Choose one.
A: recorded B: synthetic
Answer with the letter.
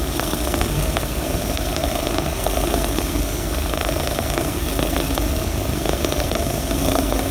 B